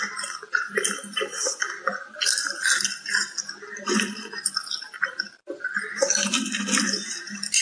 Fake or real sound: fake